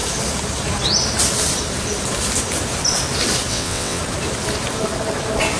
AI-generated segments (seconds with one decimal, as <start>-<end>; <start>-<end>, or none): 3.5-4.0